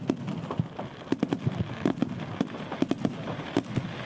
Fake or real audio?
real